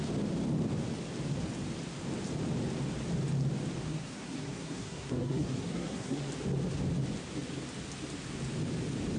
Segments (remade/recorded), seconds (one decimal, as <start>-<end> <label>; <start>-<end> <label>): 0.0-3.8 recorded; 3.8-6.3 remade; 6.3-9.2 recorded